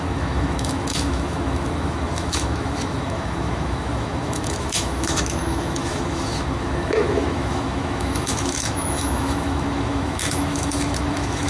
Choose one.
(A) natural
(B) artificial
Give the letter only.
B